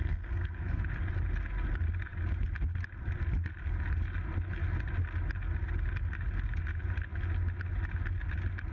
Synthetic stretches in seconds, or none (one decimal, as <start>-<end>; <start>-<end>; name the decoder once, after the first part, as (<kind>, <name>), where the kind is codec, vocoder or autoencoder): 0.0-0.8 (codec, SNAC)